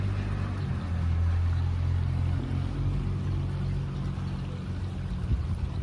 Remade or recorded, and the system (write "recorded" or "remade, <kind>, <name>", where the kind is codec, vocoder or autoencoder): recorded